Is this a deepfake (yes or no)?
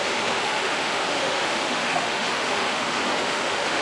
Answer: yes